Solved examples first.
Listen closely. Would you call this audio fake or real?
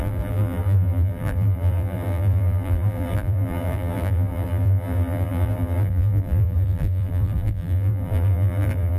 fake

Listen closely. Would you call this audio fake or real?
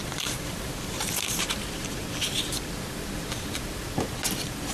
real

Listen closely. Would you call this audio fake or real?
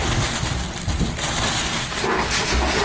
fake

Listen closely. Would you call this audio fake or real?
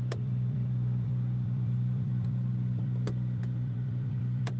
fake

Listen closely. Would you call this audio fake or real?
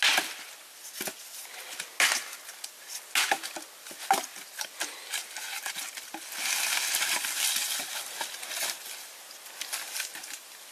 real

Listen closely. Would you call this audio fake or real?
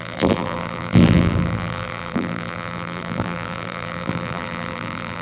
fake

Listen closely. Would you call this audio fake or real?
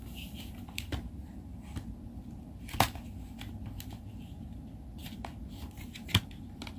real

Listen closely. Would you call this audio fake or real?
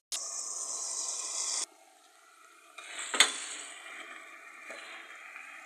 real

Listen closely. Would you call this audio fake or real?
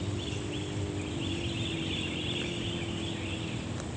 fake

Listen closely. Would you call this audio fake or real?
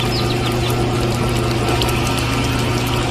real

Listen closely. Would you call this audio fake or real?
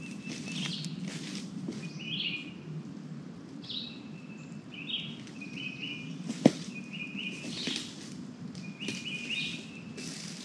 real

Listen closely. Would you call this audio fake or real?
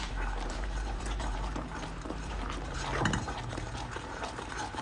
fake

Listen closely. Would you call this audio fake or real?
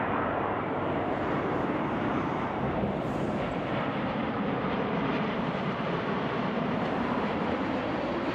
fake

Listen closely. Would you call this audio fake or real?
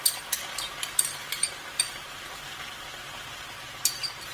fake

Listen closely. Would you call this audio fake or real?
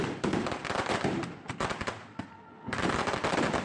fake